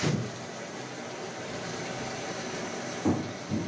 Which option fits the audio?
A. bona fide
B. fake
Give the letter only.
A